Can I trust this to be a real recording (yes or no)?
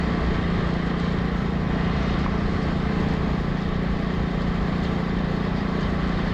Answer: yes